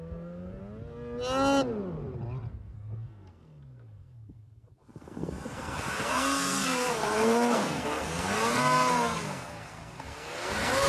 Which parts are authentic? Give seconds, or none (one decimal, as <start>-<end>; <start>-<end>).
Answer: 0.6-2.5